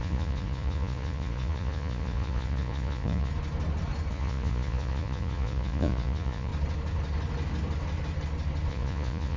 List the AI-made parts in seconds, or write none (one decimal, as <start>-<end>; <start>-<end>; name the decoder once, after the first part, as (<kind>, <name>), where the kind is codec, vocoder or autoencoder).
0.0-3.3 (vocoder, Vocos); 4.1-6.5; 8.7-9.4